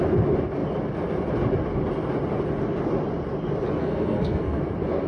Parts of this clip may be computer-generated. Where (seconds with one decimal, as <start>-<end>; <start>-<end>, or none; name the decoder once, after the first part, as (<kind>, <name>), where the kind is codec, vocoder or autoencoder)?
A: 3.8-4.6 (codec, SNAC)